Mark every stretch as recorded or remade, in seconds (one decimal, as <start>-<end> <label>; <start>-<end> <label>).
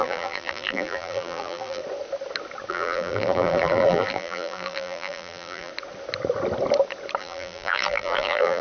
0.0-1.8 remade; 1.8-2.7 recorded; 2.7-5.7 remade; 5.7-7.2 recorded; 7.2-8.6 remade